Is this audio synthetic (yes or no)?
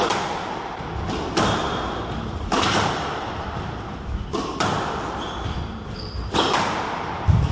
no